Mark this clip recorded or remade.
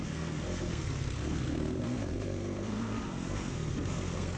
remade